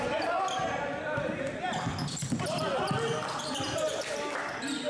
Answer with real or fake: real